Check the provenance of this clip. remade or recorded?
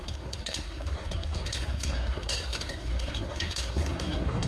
remade